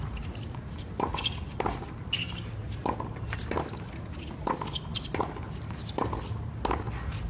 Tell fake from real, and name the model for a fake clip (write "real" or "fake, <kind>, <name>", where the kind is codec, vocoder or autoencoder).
real